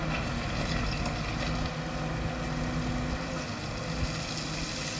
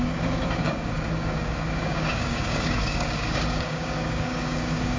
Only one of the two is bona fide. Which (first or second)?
first